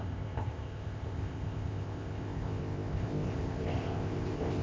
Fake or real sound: fake